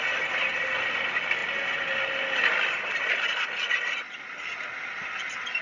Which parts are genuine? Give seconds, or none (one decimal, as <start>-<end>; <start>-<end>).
0.0-5.6

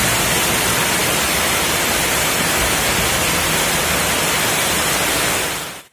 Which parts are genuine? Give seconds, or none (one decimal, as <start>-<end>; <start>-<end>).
0.0-1.0; 2.1-5.9

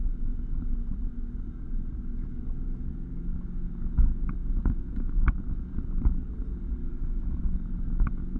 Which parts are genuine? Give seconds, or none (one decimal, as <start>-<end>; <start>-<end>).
0.0-6.8; 7.4-8.4

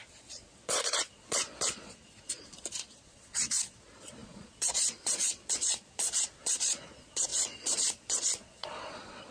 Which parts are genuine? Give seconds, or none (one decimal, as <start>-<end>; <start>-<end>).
none

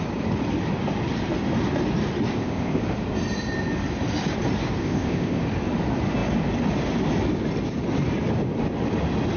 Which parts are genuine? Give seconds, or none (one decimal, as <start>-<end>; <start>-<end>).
0.0-2.3; 2.8-4.8; 5.4-9.4

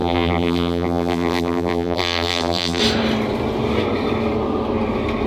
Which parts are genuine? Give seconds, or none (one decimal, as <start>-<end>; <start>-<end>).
2.8-5.3